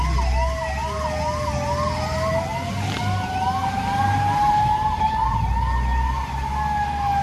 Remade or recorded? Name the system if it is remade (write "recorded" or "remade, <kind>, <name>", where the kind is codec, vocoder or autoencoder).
recorded